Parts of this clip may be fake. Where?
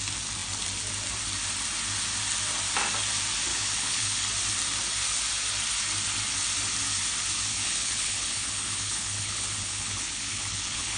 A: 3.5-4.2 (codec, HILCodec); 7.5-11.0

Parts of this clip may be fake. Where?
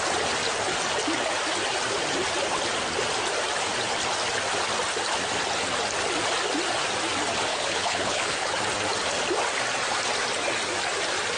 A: 7.5-8.5 (codec, HILCodec)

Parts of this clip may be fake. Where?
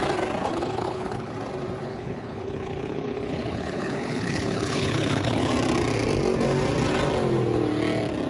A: 0.4-1.3 (codec, HILCodec); 1.9-5.5